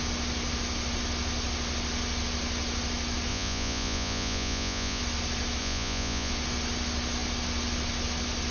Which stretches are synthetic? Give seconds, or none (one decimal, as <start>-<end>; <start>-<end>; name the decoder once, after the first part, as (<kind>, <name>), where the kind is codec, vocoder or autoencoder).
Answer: 3.3-5.0 (vocoder, Vocos); 5.6-6.3